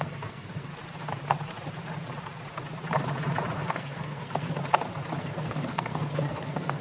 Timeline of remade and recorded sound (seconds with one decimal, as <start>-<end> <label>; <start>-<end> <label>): 0.0-0.7 remade; 0.7-3.7 recorded; 3.7-4.6 remade; 4.6-5.2 recorded; 5.2-6.8 remade